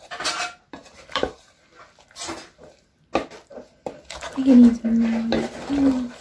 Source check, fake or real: real